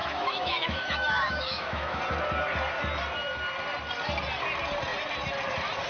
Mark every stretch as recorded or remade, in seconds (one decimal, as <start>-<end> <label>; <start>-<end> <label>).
0.0-2.0 remade; 2.0-5.9 recorded